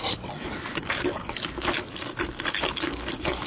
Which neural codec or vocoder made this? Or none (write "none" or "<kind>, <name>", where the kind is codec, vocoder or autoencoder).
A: none